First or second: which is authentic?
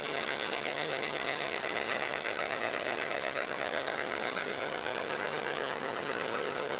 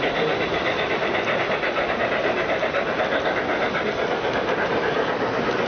second